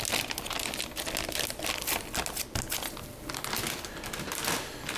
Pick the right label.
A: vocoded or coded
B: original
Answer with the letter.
B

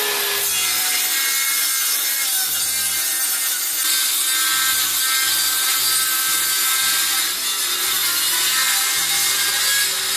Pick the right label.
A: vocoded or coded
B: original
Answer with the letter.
B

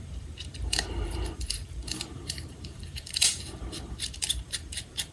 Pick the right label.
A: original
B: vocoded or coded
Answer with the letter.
B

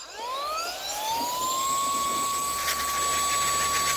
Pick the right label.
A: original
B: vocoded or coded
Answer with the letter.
A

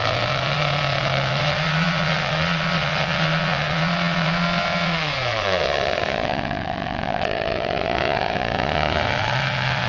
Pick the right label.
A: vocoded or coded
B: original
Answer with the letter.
A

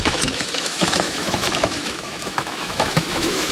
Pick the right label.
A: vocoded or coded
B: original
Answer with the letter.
A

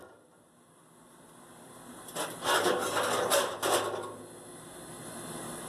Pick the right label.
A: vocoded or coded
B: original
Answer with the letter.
B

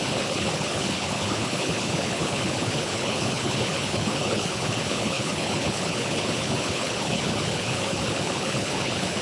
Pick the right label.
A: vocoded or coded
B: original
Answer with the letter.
A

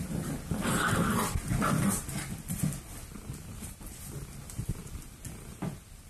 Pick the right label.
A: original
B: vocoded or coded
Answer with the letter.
A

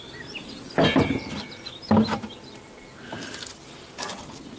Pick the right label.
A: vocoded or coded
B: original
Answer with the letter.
B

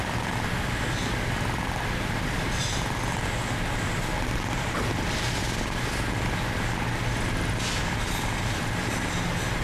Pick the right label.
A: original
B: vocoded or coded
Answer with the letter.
A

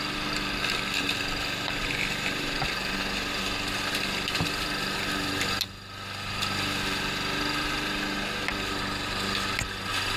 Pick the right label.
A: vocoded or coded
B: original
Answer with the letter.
B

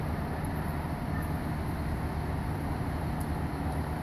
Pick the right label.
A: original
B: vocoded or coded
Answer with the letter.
A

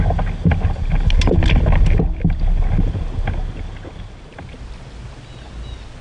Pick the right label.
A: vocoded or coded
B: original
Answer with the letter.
B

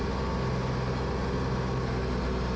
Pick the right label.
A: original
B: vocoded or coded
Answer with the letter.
A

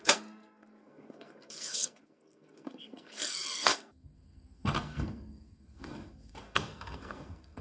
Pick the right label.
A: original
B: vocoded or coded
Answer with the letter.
B